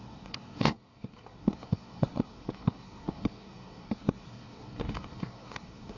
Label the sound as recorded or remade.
remade